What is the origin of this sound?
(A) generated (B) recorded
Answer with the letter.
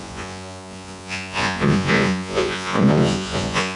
A